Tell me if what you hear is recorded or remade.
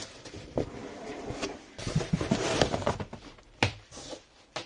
remade